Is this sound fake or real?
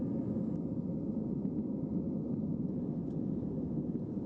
real